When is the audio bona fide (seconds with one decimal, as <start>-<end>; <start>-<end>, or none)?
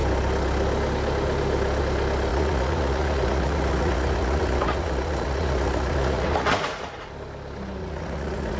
0.0-2.3; 7.1-7.8